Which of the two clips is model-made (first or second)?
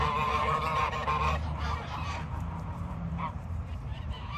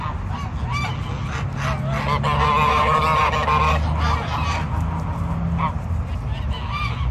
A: first